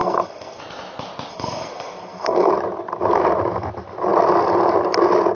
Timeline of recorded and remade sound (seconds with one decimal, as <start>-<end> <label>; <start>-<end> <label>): 0.0-0.6 remade; 0.6-1.3 recorded; 1.3-2.5 remade; 2.5-5.3 recorded